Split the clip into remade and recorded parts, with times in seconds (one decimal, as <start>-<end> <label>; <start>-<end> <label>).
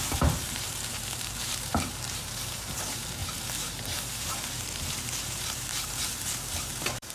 0.0-7.1 remade